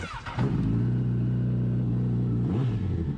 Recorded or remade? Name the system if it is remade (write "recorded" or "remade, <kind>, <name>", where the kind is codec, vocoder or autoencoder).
recorded